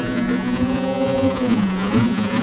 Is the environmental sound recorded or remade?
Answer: remade